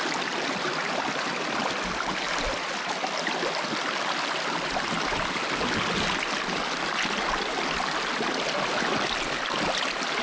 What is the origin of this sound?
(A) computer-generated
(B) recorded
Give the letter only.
B